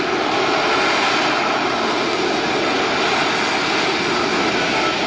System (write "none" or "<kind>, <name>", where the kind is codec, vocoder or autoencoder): none